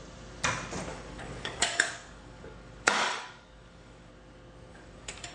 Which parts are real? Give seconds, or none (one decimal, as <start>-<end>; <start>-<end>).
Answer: 0.0-0.9; 4.1-4.7